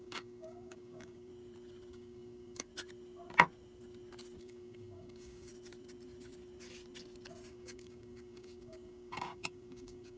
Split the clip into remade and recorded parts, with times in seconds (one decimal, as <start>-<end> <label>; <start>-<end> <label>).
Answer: 0.0-1.3 remade; 1.3-1.9 recorded; 1.9-2.7 remade; 2.7-4.4 recorded; 4.4-5.5 remade; 5.5-7.5 recorded; 7.5-10.2 remade